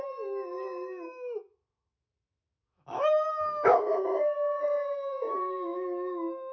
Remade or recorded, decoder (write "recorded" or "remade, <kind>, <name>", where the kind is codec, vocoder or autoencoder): remade, autoencoder, DAC-VAE